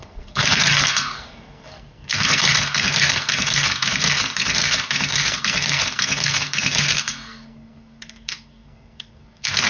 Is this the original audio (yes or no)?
no